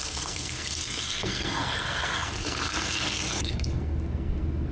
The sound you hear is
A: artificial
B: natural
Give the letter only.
A